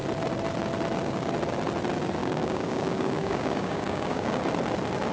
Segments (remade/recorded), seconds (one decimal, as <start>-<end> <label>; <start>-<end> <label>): 0.0-2.2 recorded; 2.2-4.4 remade; 4.4-5.1 recorded

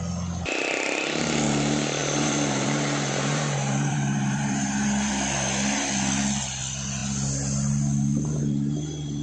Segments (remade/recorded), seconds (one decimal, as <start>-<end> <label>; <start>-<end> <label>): 0.0-2.0 recorded; 2.0-5.1 remade; 5.1-9.2 recorded

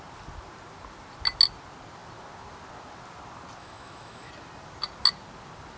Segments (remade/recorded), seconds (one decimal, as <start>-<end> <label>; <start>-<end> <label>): 0.0-3.6 recorded; 3.6-4.3 remade; 4.3-5.8 recorded

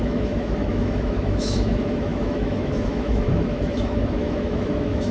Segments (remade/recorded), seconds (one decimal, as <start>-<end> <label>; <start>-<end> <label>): 0.0-5.1 remade

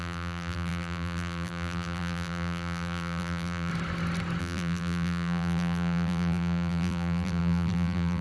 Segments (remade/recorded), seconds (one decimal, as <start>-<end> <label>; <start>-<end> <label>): 0.0-3.7 remade; 3.7-4.4 recorded; 4.4-8.2 remade

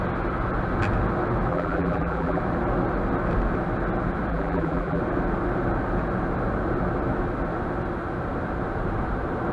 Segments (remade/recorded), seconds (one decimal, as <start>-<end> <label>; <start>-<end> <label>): 0.0-1.5 recorded; 1.5-2.4 remade; 2.4-4.3 recorded; 4.3-5.0 remade; 5.0-9.5 recorded